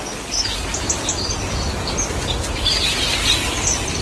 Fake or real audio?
real